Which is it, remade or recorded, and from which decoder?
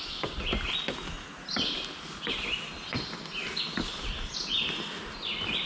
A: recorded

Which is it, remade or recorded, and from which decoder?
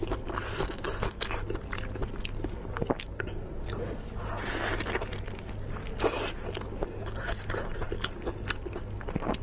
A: recorded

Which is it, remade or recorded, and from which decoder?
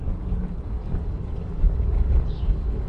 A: remade, codec, DAC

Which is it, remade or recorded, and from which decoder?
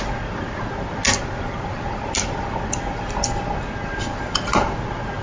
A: recorded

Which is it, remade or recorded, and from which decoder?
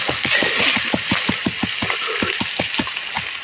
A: recorded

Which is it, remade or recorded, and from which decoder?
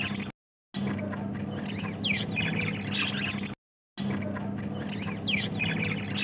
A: recorded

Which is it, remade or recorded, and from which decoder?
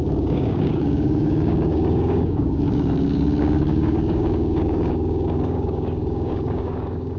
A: remade, codec, DAC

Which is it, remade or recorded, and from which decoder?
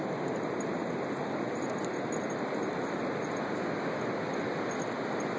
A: recorded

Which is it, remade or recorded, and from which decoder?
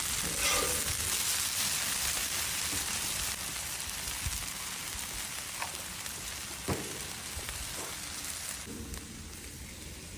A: recorded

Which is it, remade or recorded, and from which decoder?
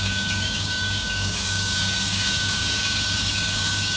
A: remade, codec, DAC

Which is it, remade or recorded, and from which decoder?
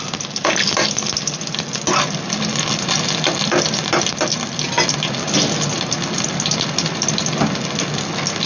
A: recorded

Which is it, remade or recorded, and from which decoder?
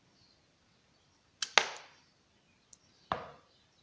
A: recorded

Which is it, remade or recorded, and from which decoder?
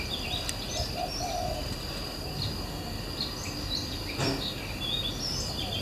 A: recorded